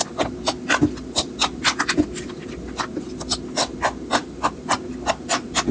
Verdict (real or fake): real